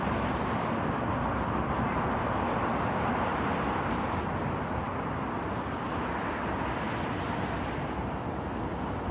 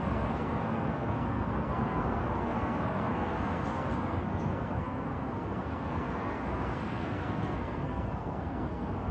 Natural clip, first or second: first